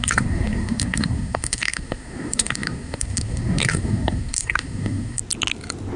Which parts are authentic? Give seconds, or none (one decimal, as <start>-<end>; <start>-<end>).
5.2-6.0